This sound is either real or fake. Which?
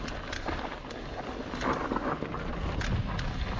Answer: real